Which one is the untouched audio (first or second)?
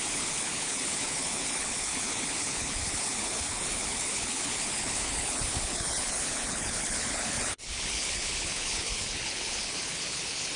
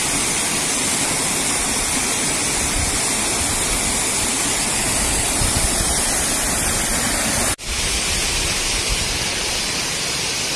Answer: second